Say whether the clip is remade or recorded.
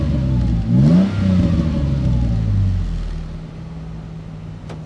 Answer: recorded